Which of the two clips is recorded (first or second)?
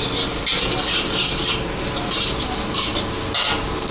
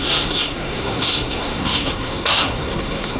first